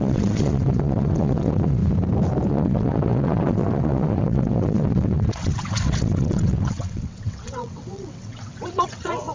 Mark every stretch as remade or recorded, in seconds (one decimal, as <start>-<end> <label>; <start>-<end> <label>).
0.0-1.8 remade; 1.8-2.5 recorded; 2.5-9.3 remade